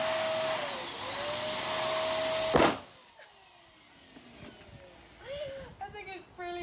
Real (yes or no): yes